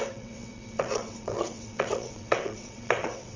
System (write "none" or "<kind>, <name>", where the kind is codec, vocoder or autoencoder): vocoder, WaveNeXt